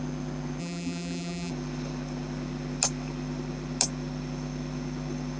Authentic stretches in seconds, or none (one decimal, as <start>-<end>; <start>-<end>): 0.0-0.6; 1.5-5.4